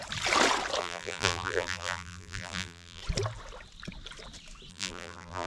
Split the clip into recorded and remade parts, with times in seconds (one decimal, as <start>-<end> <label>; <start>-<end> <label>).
0.0-0.8 recorded; 0.8-3.0 remade; 3.0-4.7 recorded; 4.7-5.5 remade